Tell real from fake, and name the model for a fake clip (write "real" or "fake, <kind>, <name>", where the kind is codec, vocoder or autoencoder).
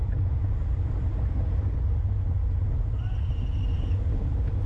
real